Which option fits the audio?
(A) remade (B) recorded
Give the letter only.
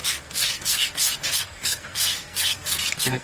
A